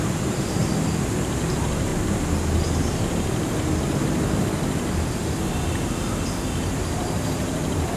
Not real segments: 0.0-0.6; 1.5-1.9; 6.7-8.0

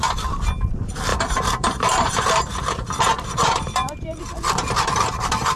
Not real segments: 1.1-4.2